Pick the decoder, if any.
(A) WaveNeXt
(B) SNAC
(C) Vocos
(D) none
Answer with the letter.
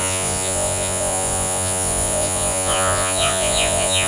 C